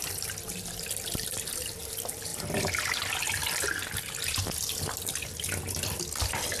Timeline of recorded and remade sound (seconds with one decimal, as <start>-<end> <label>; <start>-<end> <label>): 0.0-0.5 recorded; 0.5-2.3 remade; 2.3-6.6 recorded